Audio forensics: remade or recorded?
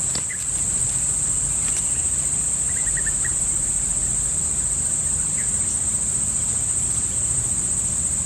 recorded